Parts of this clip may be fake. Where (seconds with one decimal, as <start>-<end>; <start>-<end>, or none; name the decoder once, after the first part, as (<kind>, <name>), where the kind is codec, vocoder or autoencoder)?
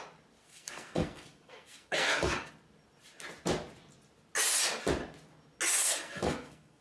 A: 0.4-2.5 (codec, SNAC); 5.8-6.8